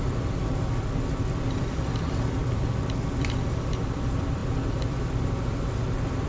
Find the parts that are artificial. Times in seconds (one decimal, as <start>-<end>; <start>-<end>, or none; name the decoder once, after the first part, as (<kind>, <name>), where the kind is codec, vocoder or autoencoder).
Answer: 0.0-6.3 (vocoder, BigVGAN v2)